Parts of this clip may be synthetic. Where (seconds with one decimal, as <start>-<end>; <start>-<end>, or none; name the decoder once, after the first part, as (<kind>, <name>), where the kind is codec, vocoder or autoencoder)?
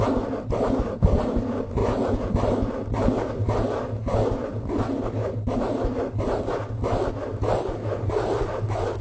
1.8-2.3 (vocoder, Vocos)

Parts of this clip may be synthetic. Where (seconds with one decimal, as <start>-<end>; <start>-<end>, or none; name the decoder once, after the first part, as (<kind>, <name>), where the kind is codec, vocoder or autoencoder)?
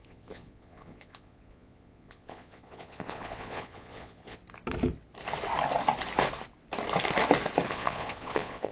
0.0-4.4 (vocoder, Vocos); 7.7-8.7